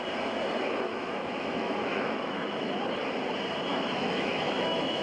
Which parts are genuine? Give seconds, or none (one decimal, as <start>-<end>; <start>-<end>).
0.0-0.9; 2.8-3.7